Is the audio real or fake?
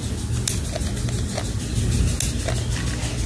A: real